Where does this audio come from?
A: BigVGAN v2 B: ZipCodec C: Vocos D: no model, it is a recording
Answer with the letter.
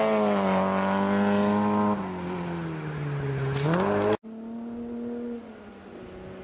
D